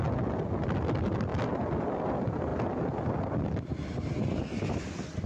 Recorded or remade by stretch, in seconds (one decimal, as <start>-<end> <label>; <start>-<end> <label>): 0.0-5.3 recorded